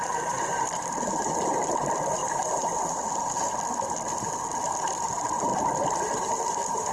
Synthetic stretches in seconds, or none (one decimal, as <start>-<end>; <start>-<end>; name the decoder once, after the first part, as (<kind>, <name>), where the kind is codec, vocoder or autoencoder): none